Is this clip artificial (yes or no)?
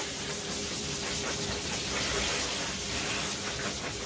no